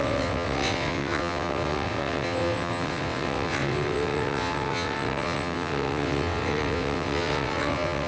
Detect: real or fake fake